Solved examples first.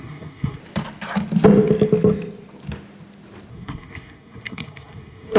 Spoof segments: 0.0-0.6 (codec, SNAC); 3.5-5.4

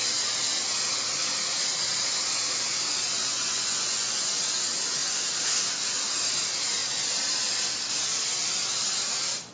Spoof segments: 3.2-4.3 (vocoder, Vocos)